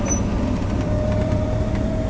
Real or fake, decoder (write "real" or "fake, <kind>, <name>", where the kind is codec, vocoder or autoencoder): fake, vocoder, BigVGAN v2